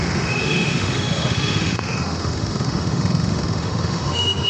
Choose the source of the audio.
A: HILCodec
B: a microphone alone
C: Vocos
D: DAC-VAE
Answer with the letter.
D